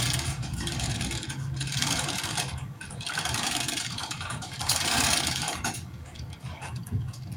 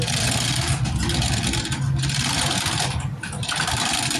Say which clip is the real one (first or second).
second